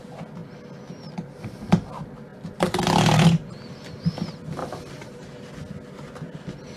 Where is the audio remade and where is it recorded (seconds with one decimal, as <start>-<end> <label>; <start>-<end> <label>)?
0.0-4.6 recorded; 4.6-5.2 remade; 5.2-6.8 recorded